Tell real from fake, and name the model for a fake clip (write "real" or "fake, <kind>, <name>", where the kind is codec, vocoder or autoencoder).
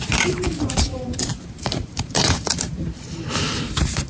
fake, vocoder, BigVGAN v2